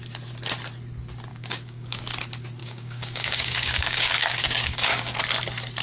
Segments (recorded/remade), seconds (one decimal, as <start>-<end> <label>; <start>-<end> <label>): 0.0-1.3 recorded; 1.3-2.0 remade; 2.0-2.6 recorded; 2.6-5.2 remade; 5.2-5.8 recorded